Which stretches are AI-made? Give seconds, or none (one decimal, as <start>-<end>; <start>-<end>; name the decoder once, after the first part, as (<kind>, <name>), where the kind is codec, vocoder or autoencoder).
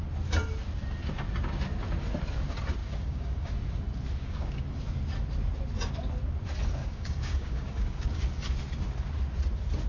2.8-3.5 (codec, DAC); 4.2-4.8; 6.8-8.2